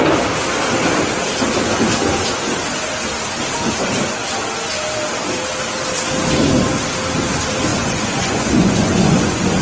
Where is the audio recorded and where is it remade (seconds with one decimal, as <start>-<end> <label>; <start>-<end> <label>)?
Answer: 0.0-7.7 recorded; 7.7-9.6 remade